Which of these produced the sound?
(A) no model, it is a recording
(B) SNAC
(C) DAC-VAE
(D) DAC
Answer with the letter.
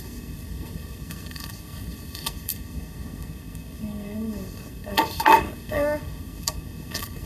B